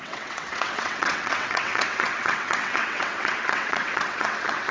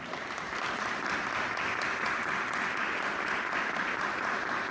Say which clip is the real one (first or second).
second